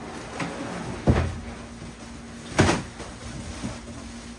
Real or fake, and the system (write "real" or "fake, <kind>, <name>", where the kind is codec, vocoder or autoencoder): real